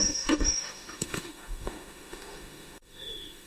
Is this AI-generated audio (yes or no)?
yes